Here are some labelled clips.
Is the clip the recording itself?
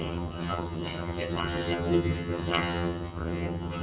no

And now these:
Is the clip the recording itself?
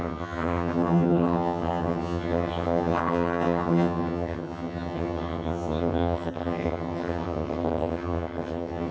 no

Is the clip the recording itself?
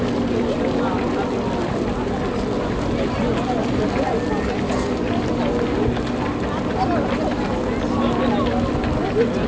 yes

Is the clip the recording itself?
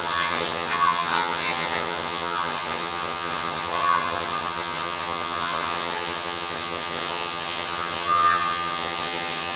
no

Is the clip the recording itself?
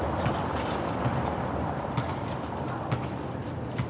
yes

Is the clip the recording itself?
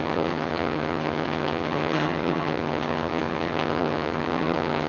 no